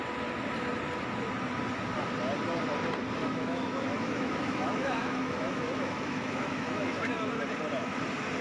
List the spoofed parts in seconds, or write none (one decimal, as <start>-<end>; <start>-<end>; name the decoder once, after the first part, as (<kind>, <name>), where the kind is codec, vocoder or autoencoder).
3.2-7.3 (autoencoder, DAC-VAE)